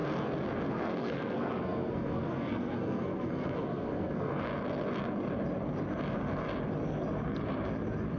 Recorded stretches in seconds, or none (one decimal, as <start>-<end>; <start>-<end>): 0.0-0.7; 4.5-8.2